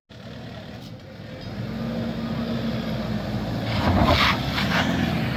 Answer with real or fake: real